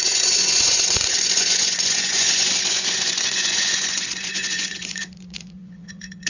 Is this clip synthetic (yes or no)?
yes